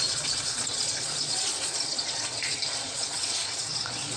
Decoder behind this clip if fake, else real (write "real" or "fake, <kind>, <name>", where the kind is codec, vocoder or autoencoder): fake, vocoder, Vocos